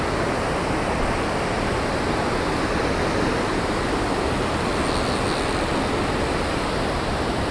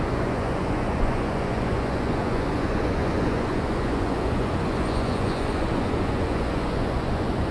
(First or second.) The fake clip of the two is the second